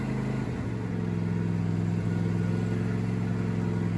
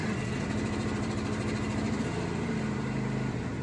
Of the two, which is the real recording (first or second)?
first